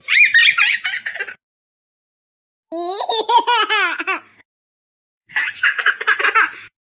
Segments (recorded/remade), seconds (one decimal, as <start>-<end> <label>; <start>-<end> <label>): 0.0-4.3 recorded; 4.3-5.9 remade; 5.9-7.0 recorded